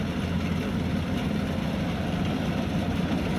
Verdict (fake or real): real